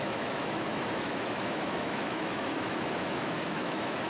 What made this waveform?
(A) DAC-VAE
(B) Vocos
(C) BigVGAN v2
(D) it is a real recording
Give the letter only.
A